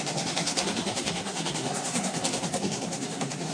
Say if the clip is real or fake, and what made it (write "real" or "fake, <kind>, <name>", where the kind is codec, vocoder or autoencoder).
fake, codec, SNAC